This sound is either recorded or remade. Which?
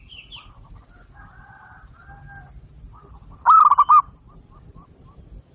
recorded